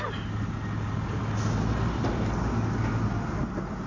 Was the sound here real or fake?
real